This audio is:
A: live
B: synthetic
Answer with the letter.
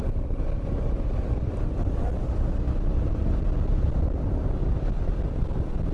A